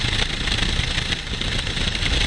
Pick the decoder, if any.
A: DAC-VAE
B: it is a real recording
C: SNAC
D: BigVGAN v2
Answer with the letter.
B